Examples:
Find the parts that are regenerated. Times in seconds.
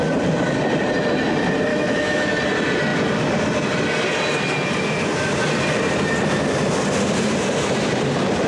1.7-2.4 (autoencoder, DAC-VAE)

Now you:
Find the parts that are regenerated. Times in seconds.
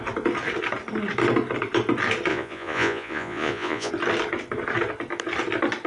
2.3-3.9 (vocoder, Vocos)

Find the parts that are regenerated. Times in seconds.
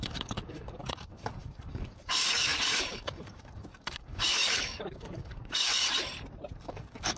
0.0-5.8 (codec, DAC); 6.6-7.2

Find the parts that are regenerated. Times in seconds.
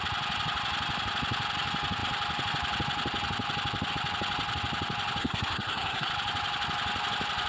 5.2-6.1 (codec, SNAC)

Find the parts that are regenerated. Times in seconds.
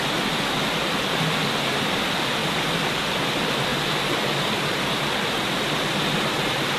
2.4-3.2 (vocoder, BigVGAN v2)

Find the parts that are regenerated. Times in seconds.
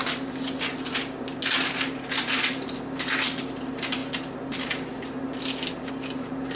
none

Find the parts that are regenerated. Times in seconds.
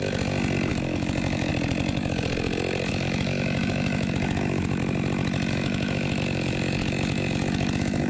0.7-1.5 (autoencoder, DAC-VAE); 2.9-4.8; 5.5-8.1